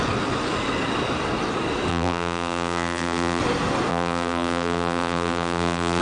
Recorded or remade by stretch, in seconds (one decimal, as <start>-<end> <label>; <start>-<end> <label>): 0.0-1.9 recorded; 1.9-3.4 remade; 3.4-3.9 recorded; 3.9-6.0 remade